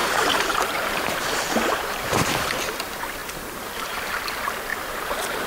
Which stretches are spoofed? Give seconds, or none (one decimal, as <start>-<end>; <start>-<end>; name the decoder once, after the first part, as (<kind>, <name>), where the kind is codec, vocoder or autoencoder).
0.0-2.6 (vocoder, BigVGAN v2); 3.2-4.2; 4.7-5.5